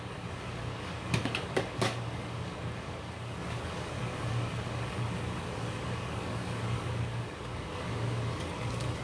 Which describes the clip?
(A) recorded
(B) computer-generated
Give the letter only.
B